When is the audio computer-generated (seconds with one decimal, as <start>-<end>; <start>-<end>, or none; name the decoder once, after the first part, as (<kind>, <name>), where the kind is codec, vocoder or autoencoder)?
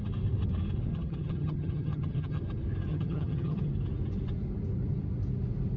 0.9-2.4 (vocoder, HiFi-GAN); 2.9-3.7